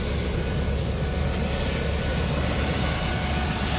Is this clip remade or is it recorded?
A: recorded